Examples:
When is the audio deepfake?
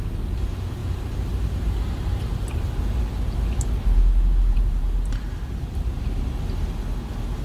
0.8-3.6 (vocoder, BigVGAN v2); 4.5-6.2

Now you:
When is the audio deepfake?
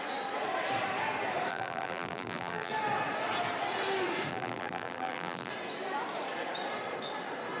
1.5-2.7 (vocoder, BigVGAN v2); 4.3-5.5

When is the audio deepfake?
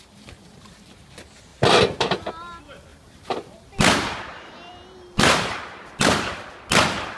1.5-2.3 (vocoder, BigVGAN v2); 2.9-6.5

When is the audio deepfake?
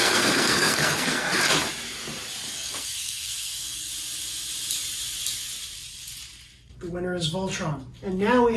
0.0-1.3 (codec, SNAC); 2.5-3.9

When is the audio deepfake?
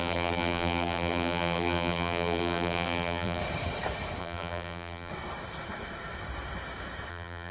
0.0-3.4 (vocoder, BigVGAN v2); 4.2-5.1; 7.1-7.5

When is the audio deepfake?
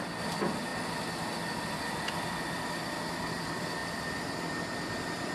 none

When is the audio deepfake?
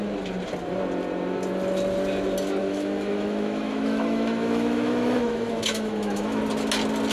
2.6-6.4 (autoencoder, DAC-VAE)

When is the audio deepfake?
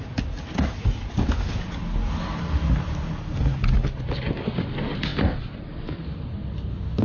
none